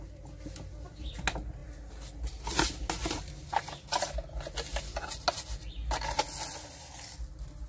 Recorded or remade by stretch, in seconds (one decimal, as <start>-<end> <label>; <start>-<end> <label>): 0.0-7.7 recorded